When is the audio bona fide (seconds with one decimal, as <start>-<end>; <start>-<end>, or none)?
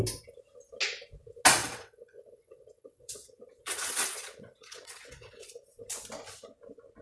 0.0-1.6; 5.5-7.0